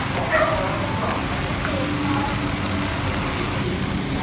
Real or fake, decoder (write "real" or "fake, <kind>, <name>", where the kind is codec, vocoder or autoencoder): real